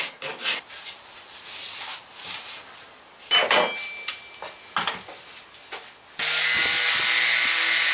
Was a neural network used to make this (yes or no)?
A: no